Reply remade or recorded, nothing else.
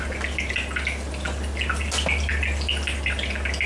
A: recorded